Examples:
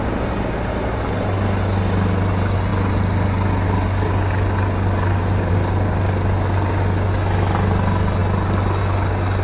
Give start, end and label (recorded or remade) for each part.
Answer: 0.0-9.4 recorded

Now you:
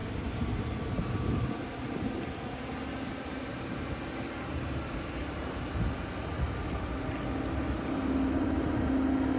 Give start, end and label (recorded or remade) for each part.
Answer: 0.0-0.6 remade; 0.6-9.4 recorded

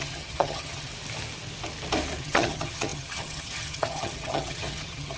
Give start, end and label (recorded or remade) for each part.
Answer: 0.0-0.9 remade; 0.9-2.2 recorded; 2.2-5.2 remade

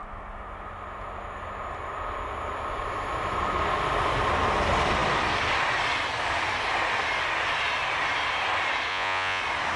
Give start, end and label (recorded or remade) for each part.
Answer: 0.0-8.9 recorded; 8.9-9.4 remade; 9.4-9.8 recorded

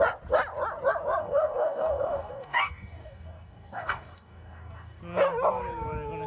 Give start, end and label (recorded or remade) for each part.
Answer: 0.0-1.2 recorded; 1.2-5.0 remade; 5.0-6.3 recorded

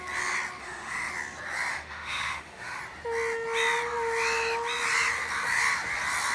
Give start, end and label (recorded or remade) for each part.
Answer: 0.0-0.6 recorded; 0.6-1.1 remade; 1.1-1.7 recorded; 1.7-2.8 remade; 2.8-6.3 recorded

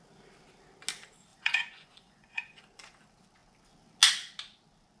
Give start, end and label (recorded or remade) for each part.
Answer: 0.0-1.3 recorded; 1.3-2.6 remade; 2.6-5.0 recorded

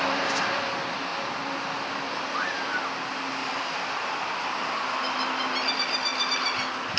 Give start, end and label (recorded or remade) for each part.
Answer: 0.0-3.4 recorded; 3.4-4.7 remade; 4.7-7.0 recorded